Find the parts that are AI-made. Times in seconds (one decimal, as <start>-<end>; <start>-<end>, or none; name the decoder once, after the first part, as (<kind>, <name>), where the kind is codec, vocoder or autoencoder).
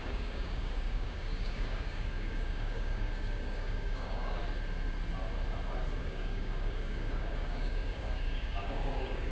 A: 0.0-4.4 (codec, DAC); 6.0-9.3